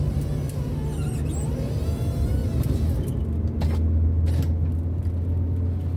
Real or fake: real